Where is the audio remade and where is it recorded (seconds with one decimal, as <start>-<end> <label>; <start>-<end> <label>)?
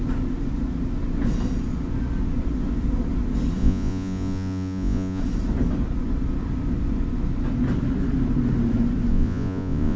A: 0.0-3.6 recorded; 3.6-5.2 remade; 5.2-9.1 recorded; 9.1-10.0 remade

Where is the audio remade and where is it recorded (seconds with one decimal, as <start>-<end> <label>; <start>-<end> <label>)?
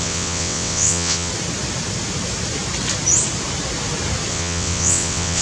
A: 0.0-1.3 remade; 1.3-4.3 recorded; 4.3-5.4 remade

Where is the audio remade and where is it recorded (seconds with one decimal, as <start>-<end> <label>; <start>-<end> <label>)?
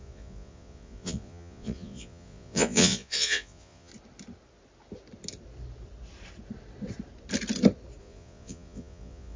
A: 0.0-3.9 remade; 3.9-8.0 recorded; 8.0-9.4 remade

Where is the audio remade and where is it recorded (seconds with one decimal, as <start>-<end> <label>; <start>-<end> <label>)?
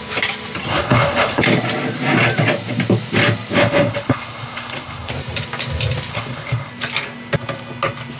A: 0.0-0.7 recorded; 0.7-1.4 remade; 1.4-3.6 recorded; 3.6-5.1 remade; 5.1-6.1 recorded; 6.1-6.7 remade; 6.7-8.2 recorded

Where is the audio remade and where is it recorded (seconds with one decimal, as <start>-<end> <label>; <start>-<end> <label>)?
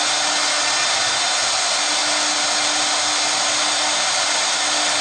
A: 0.0-5.0 recorded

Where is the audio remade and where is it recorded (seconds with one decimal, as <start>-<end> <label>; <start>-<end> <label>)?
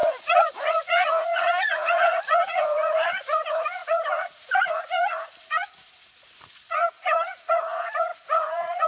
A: 0.0-8.9 remade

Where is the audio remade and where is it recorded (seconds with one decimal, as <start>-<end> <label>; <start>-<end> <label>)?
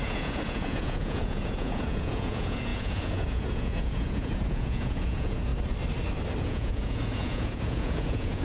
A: 0.0-5.5 remade; 5.5-6.4 recorded; 6.4-8.4 remade